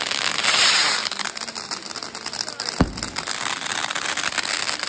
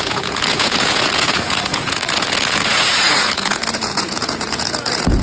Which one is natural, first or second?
first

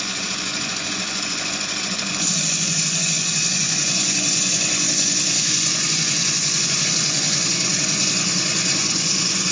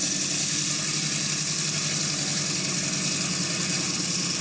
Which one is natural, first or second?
second